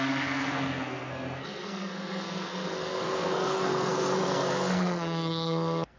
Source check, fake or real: fake